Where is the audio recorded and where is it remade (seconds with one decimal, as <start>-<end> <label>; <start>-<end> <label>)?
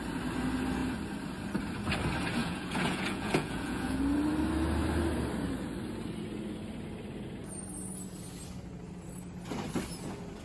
0.0-2.4 recorded; 2.4-4.0 remade; 4.0-10.4 recorded